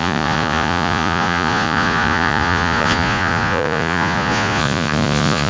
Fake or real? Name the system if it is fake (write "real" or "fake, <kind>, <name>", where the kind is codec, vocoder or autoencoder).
fake, vocoder, Vocos